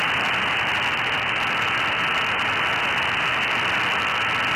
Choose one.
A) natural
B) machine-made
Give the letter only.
A